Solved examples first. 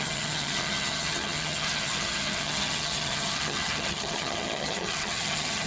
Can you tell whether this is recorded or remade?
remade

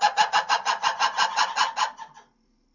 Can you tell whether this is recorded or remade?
recorded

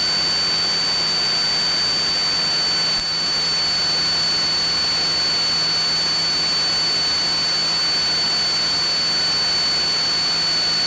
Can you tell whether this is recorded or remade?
recorded